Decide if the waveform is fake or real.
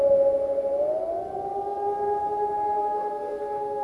real